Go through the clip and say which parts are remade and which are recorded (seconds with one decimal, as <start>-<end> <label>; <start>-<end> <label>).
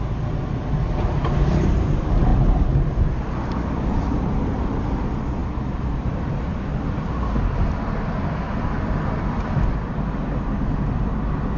0.0-11.6 recorded